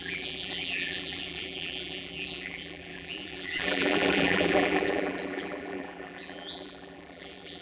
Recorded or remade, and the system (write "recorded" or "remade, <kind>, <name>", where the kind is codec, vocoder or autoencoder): remade, vocoder, BigVGAN v2